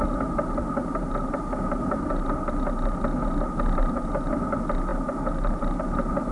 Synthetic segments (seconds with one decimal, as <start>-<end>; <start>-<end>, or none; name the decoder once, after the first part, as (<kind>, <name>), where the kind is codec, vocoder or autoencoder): none